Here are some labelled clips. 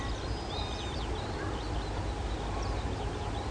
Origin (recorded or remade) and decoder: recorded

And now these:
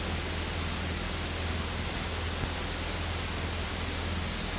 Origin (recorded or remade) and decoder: recorded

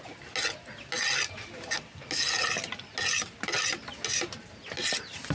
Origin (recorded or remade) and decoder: recorded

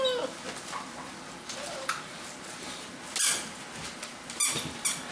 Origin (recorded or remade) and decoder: recorded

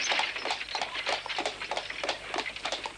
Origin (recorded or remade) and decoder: recorded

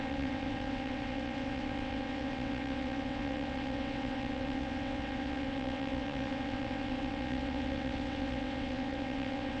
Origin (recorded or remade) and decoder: remade, vocoder, WaveNeXt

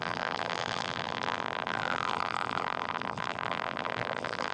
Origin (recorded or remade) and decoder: remade, vocoder, BigVGAN v2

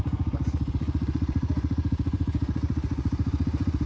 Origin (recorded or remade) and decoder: remade, vocoder, Vocos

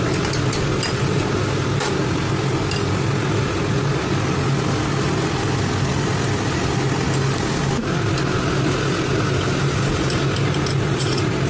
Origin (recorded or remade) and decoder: recorded